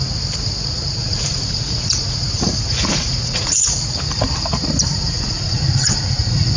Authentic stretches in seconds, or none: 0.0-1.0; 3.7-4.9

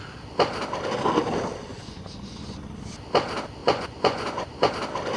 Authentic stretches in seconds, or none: 0.0-1.7; 2.6-3.6; 4.7-5.2

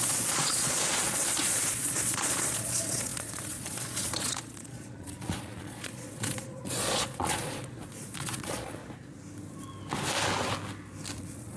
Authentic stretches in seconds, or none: 8.8-11.2